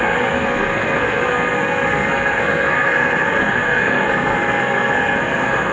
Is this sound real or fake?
fake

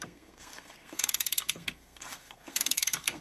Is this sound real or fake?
fake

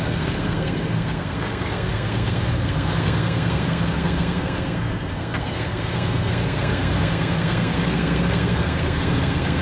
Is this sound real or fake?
fake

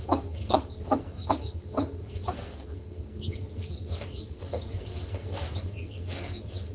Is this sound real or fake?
fake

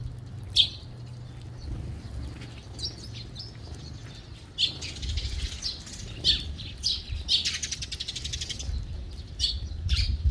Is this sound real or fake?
real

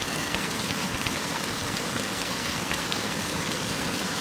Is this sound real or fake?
fake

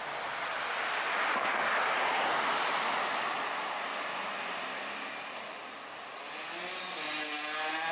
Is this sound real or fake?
real